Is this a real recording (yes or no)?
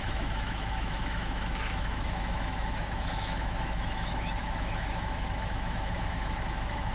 no